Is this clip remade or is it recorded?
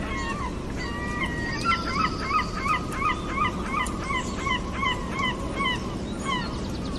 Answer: recorded